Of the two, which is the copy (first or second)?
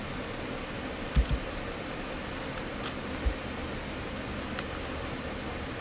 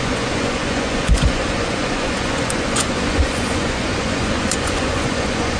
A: second